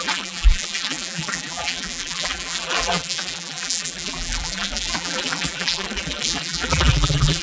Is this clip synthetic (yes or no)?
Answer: yes